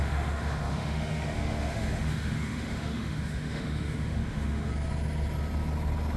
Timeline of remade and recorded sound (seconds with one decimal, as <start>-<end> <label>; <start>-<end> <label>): 0.0-4.7 remade; 4.7-6.2 recorded